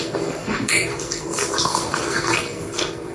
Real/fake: fake